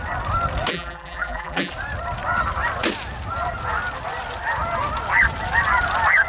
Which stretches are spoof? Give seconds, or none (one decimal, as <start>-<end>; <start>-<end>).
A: 0.7-1.7